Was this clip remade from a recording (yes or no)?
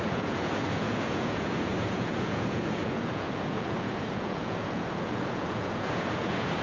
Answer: yes